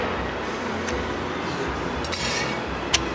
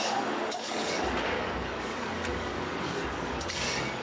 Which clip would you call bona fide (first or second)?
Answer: first